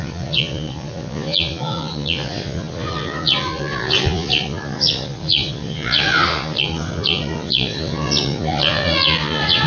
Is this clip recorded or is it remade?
remade